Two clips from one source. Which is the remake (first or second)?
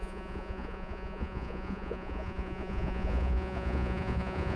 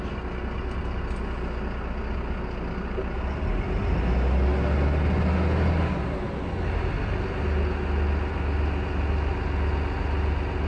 first